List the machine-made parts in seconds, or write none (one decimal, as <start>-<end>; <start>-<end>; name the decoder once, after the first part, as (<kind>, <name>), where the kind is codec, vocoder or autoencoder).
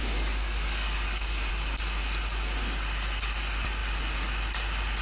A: 0.0-1.5 (codec, DAC)